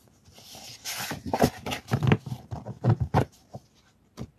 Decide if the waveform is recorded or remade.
recorded